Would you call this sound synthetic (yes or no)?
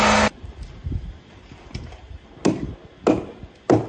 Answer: no